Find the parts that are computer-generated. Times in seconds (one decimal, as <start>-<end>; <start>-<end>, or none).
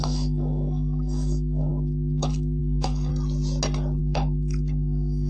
0.0-3.1; 4.0-5.3